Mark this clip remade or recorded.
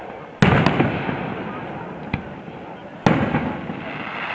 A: recorded